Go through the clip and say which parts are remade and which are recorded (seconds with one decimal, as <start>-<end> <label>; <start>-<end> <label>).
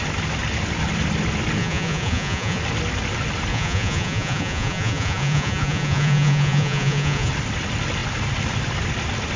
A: 0.0-1.6 recorded; 1.6-2.6 remade; 2.6-3.5 recorded; 3.5-7.3 remade; 7.3-9.4 recorded